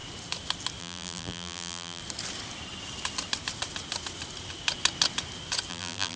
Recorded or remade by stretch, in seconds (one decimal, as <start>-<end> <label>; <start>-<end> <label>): 0.0-0.8 recorded; 0.8-2.0 remade; 2.0-5.7 recorded; 5.7-6.2 remade